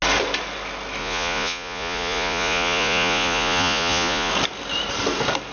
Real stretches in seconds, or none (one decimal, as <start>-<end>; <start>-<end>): 0.0-1.0; 4.3-5.5